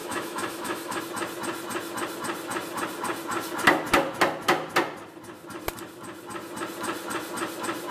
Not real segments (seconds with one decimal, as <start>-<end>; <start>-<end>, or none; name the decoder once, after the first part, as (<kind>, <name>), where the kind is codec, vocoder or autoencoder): 0.0-1.0 (autoencoder, DAC-VAE)